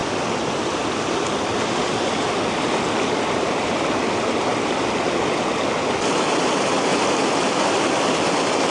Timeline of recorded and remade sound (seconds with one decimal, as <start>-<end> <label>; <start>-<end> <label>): 0.0-8.7 recorded